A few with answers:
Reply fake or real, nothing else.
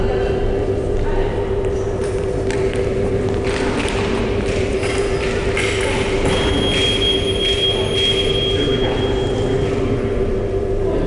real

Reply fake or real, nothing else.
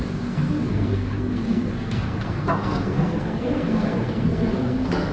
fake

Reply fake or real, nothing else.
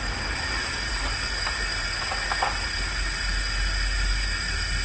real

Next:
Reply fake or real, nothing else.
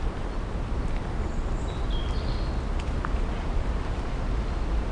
real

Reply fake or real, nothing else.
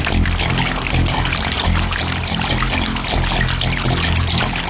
real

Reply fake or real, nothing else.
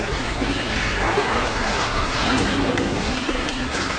fake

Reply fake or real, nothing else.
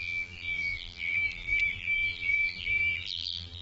fake